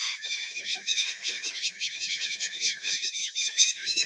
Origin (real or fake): fake